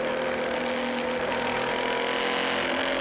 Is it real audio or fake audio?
real